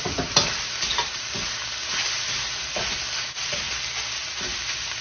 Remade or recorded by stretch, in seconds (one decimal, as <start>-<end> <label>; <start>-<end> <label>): 0.0-5.0 recorded